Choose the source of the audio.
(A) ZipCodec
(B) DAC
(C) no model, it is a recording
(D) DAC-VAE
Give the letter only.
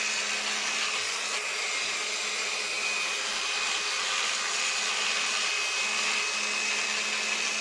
C